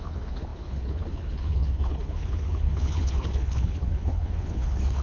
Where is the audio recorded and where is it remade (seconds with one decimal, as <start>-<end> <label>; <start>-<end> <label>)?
0.0-5.0 remade